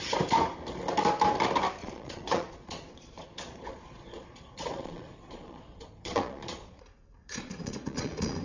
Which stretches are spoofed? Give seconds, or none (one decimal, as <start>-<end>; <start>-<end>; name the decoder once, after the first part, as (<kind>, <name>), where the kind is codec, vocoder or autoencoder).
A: 1.8-6.8 (vocoder, Vocos); 7.2-8.4